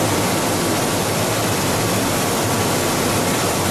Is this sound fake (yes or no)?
no